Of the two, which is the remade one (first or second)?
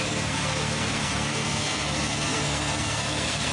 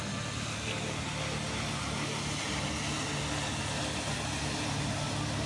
first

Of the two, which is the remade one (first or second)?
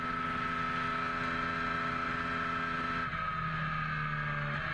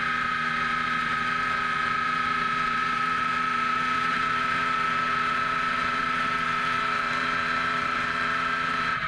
second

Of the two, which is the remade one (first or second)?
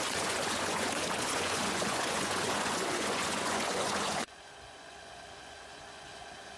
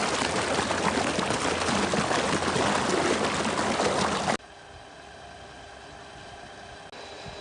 first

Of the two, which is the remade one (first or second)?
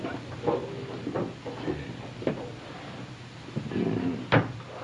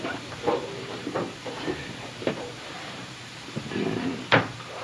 second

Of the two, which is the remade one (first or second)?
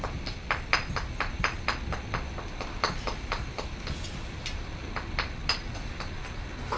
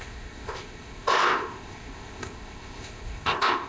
second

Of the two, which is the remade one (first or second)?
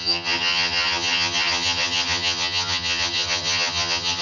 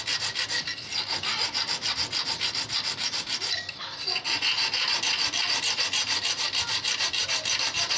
first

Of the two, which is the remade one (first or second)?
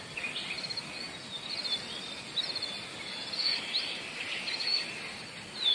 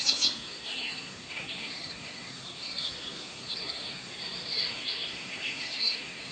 second